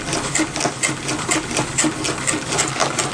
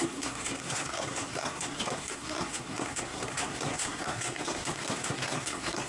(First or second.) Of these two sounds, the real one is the first